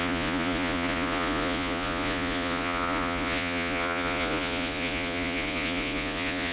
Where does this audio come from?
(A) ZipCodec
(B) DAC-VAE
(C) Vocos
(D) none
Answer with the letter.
C